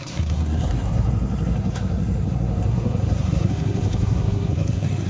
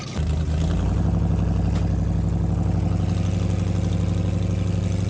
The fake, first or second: first